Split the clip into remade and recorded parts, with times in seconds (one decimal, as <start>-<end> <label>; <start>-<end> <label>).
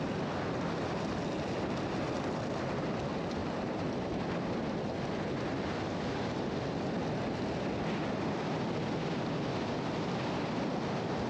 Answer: 0.0-3.4 recorded; 3.4-4.2 remade; 4.2-11.3 recorded